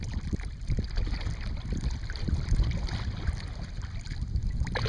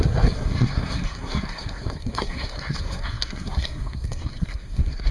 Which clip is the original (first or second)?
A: first